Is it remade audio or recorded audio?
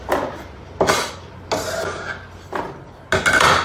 recorded